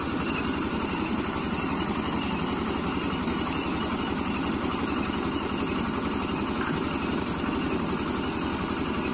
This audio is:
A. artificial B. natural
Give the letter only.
B